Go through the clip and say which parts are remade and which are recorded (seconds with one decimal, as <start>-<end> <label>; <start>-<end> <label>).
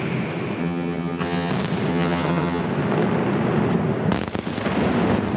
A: 0.0-0.6 recorded; 0.6-1.5 remade; 1.5-1.9 recorded; 1.9-2.6 remade; 2.6-5.4 recorded